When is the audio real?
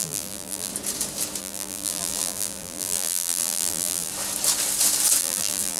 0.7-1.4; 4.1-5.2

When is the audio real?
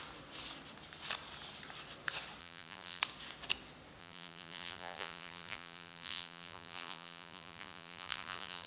0.0-2.4; 3.0-4.0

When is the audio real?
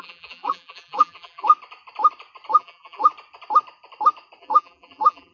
1.5-2.5; 3.1-4.4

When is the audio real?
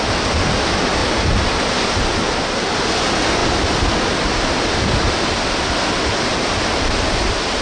0.0-1.0; 2.4-6.3; 6.9-7.6